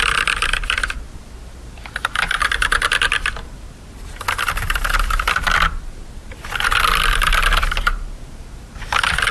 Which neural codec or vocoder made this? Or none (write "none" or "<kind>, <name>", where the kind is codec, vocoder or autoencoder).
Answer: none